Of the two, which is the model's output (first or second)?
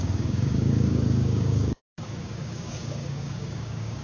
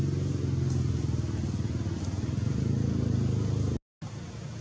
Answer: first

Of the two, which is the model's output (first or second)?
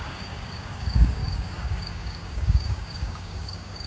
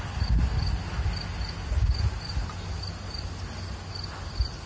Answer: first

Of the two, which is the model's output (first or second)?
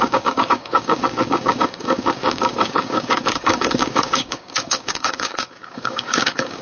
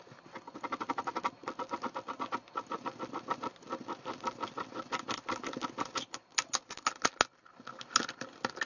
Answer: first